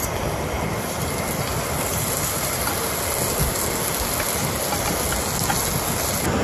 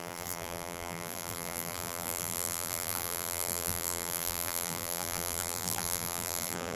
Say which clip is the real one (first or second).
first